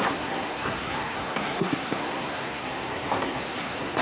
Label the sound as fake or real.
fake